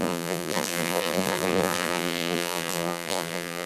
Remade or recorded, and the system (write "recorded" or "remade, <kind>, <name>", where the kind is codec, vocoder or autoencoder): remade, vocoder, BigVGAN v2